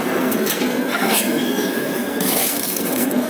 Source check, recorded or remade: remade